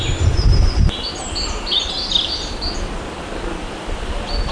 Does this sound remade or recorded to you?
remade